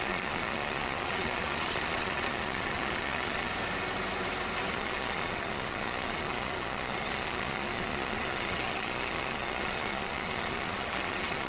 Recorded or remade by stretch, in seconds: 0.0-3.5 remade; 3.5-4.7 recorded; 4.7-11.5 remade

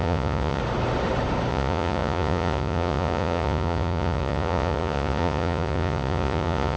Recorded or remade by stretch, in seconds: 0.0-0.6 remade; 0.6-1.5 recorded; 1.5-6.8 remade